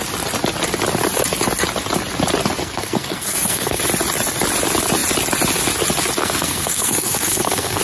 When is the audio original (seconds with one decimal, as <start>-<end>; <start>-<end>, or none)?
0.0-2.6; 3.8-6.2